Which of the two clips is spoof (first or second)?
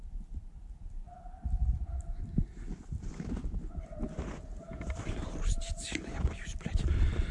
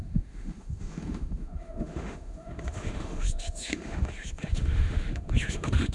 second